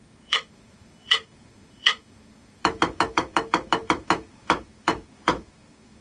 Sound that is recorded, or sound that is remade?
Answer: remade